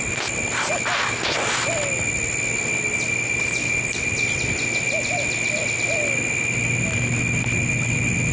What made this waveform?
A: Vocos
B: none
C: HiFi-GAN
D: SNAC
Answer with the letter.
B